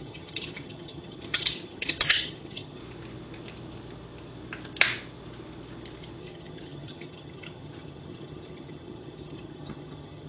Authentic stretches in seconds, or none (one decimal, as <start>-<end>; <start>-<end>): 2.8-6.2